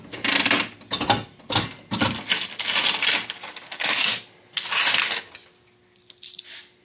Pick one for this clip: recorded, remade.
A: recorded